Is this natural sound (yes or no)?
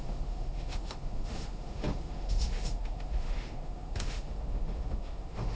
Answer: no